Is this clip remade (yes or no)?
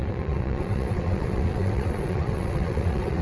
yes